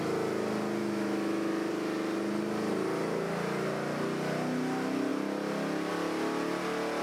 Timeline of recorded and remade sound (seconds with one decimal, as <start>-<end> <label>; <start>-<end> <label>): 0.0-0.8 recorded; 0.8-1.7 remade; 1.7-7.0 recorded